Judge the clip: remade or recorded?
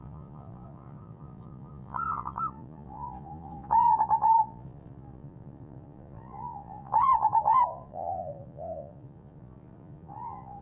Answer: remade